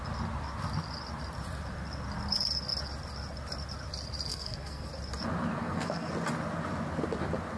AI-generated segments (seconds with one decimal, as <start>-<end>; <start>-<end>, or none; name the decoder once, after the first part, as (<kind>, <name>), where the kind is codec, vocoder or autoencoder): 4.3-4.9 (codec, SNAC); 5.6-6.1